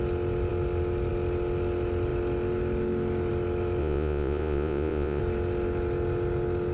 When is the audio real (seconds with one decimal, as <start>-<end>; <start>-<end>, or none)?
0.0-3.8; 5.2-6.7